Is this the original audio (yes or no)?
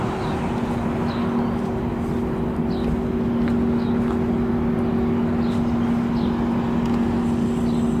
yes